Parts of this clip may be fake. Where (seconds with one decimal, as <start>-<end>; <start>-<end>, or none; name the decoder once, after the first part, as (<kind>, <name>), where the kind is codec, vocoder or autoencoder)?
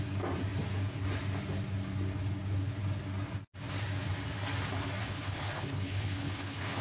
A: 5.0-6.8 (codec, HILCodec)